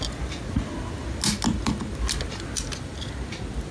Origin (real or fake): real